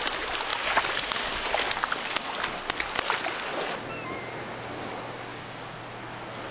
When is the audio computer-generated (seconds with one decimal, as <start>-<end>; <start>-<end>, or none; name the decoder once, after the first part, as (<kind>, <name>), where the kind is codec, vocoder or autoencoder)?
5.3-5.8 (codec, DAC)